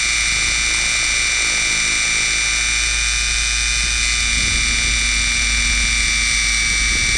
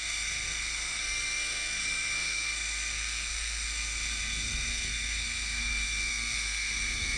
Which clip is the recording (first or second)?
first